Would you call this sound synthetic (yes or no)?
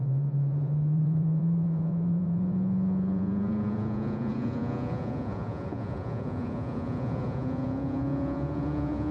yes